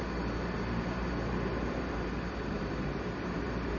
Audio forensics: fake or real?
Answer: fake